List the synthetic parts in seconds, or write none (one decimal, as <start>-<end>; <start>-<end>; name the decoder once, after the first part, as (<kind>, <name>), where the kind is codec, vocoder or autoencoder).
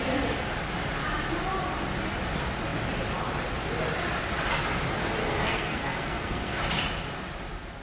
5.2-6.6 (codec, SNAC)